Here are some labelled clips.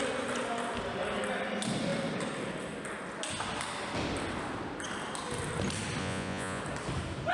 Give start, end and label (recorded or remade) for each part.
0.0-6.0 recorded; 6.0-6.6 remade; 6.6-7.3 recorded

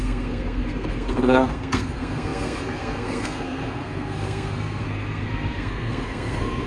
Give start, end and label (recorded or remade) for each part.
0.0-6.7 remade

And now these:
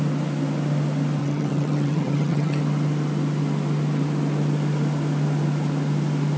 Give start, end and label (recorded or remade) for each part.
0.0-1.2 recorded; 1.2-2.6 remade; 2.6-6.4 recorded